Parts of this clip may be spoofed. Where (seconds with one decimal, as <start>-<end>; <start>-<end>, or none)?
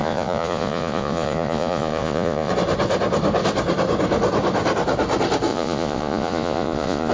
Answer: 0.0-2.5; 5.5-7.1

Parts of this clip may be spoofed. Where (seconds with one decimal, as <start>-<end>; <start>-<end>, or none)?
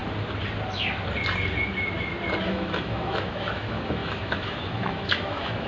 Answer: 2.4-5.7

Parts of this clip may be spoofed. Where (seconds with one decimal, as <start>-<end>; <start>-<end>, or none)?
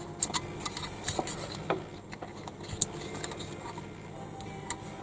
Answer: none